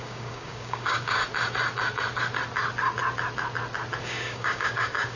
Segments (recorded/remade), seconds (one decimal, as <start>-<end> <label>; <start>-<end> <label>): 0.0-1.2 remade; 1.2-4.0 recorded; 4.0-5.2 remade